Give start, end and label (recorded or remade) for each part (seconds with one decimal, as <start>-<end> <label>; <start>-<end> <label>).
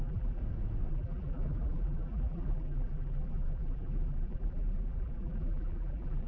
0.0-0.4 remade; 0.4-0.9 recorded; 0.9-6.3 remade